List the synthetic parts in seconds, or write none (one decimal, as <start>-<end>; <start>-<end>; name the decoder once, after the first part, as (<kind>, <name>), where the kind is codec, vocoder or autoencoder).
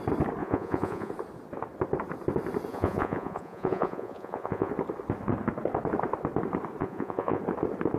0.4-1.1 (vocoder, Vocos); 2.7-4.7; 6.8-7.4